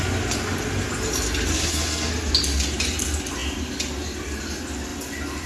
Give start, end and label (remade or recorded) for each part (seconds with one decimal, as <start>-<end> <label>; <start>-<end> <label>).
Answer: 0.0-1.5 recorded; 1.5-2.1 remade; 2.1-5.5 recorded